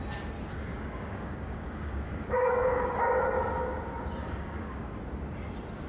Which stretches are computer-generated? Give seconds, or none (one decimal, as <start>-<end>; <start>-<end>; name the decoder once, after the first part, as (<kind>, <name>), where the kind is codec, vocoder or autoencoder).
0.7-3.1 (codec, DAC); 4.2-5.0